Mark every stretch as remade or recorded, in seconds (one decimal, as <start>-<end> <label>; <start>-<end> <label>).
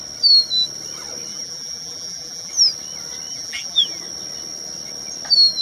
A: 0.0-1.3 recorded; 1.3-2.5 remade; 2.5-3.3 recorded; 3.3-4.0 remade; 4.0-5.6 recorded